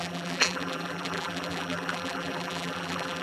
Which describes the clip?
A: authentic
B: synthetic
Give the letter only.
B